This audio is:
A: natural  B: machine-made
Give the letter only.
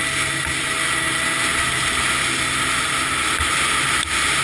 A